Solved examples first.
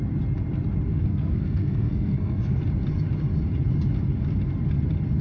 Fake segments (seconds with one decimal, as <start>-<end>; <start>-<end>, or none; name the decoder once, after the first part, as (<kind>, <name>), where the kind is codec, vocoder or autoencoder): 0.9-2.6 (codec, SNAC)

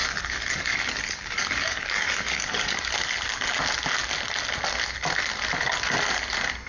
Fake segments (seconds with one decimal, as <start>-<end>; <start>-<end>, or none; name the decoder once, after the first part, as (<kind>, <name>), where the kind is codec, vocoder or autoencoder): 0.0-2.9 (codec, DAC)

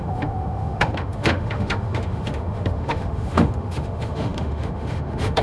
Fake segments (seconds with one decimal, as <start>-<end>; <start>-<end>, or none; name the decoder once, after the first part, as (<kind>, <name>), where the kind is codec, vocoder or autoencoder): 0.0-5.4 (autoencoder, DAC-VAE)

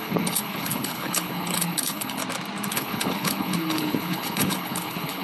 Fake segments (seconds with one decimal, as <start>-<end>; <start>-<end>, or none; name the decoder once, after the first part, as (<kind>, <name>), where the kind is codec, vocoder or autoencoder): 0.0-2.2 (codec, HILCodec); 2.7-5.2

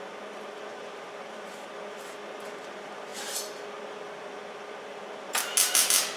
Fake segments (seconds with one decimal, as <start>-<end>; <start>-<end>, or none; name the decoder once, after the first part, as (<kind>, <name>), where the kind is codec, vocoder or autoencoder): none